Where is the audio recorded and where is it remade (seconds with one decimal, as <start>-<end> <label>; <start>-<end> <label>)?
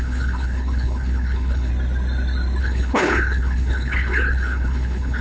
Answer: 0.0-1.7 remade; 1.7-2.6 recorded; 2.6-5.2 remade